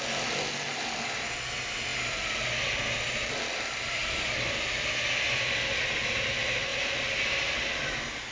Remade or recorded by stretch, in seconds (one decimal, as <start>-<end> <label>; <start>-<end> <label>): 0.0-8.3 recorded